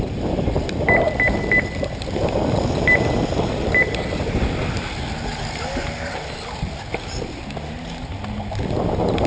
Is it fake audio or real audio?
real